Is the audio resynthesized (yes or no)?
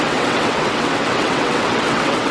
yes